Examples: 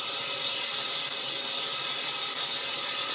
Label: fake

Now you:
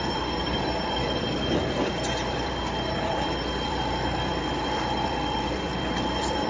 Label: fake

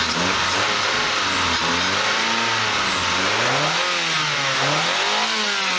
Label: real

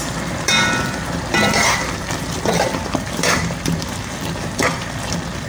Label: fake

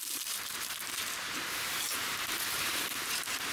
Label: fake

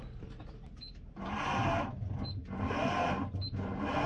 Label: real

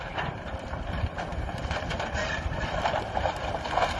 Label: real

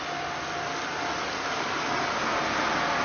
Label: real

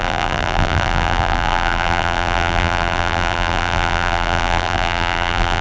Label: fake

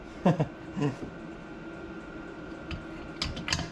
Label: real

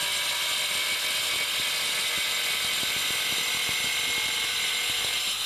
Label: real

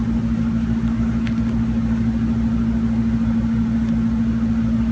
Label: real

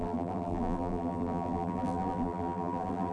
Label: fake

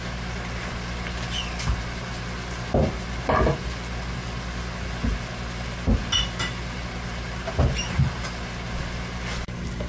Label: real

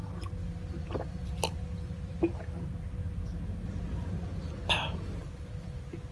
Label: real